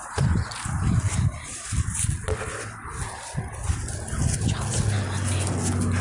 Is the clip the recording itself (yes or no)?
yes